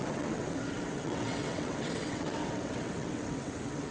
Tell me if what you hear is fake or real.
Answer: fake